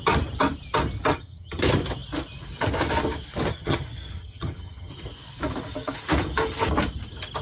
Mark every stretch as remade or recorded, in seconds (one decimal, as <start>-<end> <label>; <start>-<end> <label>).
0.0-1.1 recorded; 1.1-1.6 remade; 1.6-3.5 recorded; 3.5-4.9 remade; 4.9-7.4 recorded